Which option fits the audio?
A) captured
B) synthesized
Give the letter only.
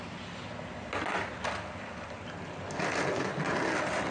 A